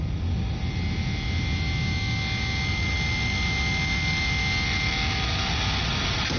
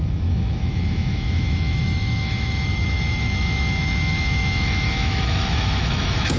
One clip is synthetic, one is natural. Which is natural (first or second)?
first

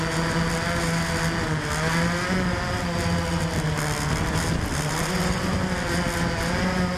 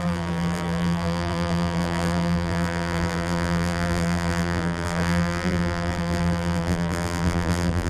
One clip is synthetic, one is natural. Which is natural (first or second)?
first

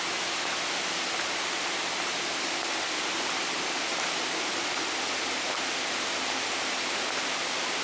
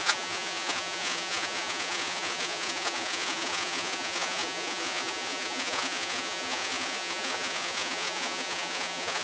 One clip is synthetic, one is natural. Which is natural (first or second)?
first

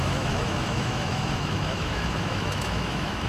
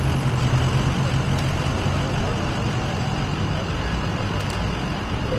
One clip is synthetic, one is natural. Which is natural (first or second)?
second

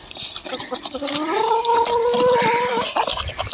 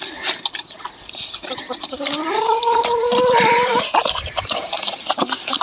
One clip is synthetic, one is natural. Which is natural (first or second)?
first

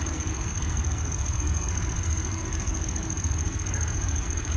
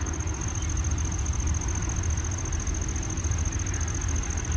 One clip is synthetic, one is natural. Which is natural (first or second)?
second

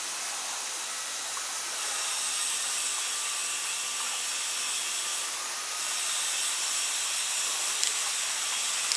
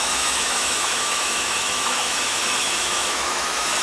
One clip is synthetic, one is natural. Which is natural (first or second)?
first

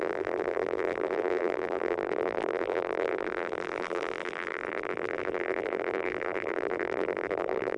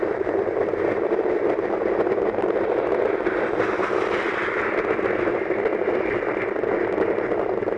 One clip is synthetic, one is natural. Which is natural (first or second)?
second